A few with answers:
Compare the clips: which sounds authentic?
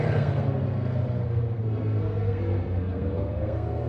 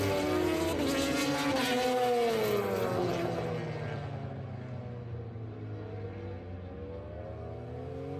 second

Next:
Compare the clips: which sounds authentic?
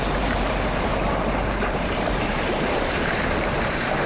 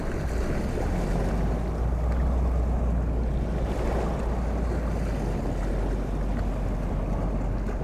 second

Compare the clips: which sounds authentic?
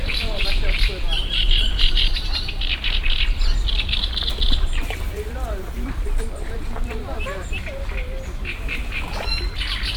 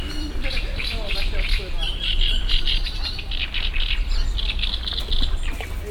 second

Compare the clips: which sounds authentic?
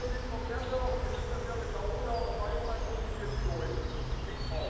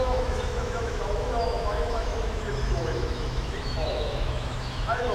first